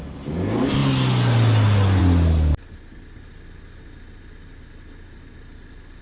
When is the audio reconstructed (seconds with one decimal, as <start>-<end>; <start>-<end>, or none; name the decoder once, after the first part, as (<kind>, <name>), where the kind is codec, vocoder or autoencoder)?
none